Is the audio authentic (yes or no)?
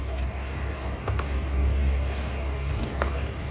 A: no